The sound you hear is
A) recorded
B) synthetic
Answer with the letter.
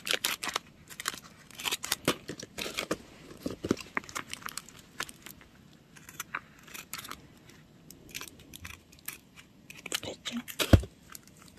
B